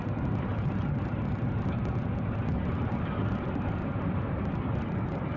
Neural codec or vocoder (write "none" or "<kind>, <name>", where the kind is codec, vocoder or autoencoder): none